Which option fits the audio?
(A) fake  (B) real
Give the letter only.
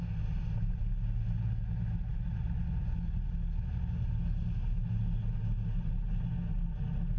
B